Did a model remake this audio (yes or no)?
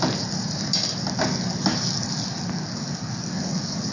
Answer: no